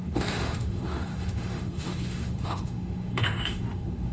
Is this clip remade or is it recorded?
remade